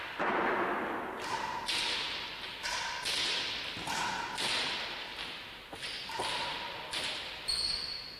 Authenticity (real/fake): real